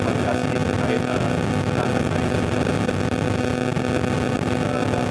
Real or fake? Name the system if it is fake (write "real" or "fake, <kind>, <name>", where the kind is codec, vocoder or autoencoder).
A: real